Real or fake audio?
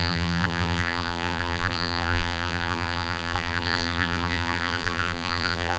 fake